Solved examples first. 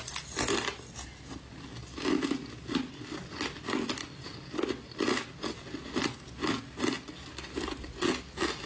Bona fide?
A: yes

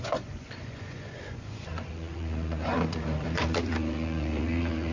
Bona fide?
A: no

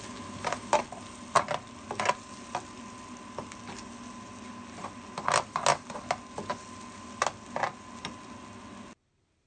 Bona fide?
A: yes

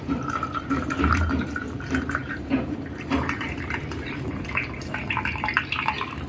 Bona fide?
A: no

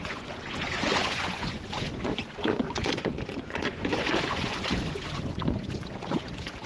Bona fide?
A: no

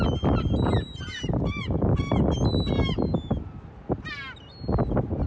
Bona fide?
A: yes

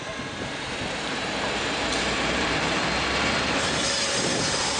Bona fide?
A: no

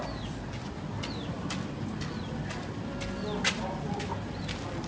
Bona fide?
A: yes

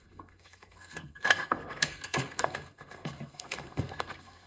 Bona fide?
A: no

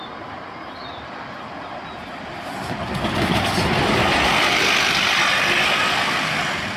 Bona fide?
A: yes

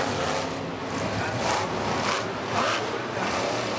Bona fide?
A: yes